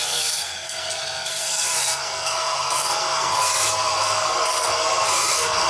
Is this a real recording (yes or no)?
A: no